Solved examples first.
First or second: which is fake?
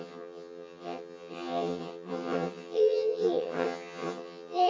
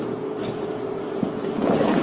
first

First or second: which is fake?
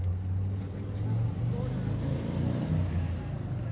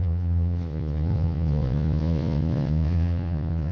second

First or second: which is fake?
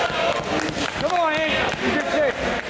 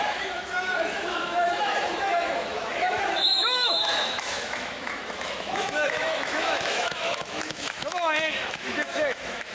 second